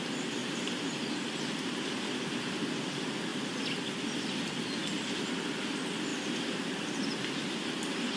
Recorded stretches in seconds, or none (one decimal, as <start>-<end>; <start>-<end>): 0.0-0.4; 1.0-8.2

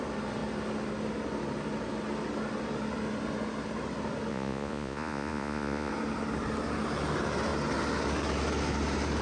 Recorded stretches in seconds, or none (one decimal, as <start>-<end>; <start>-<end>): 0.0-4.3; 5.9-9.2

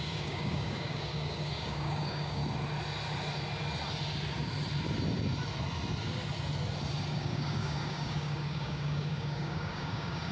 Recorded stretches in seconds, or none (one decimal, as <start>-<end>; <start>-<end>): 2.4-7.1